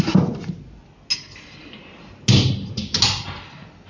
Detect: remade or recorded recorded